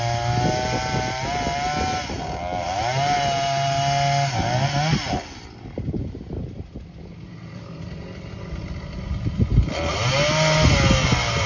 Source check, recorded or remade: recorded